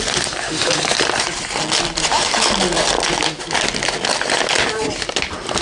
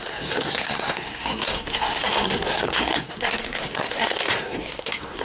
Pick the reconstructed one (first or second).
second